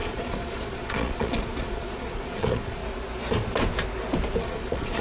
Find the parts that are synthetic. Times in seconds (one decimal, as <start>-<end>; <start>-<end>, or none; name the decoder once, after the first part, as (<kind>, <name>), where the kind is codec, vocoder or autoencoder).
0.0-2.8 (vocoder, Vocos); 4.4-5.0